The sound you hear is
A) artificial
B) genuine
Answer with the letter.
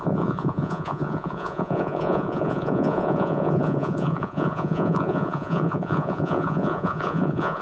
A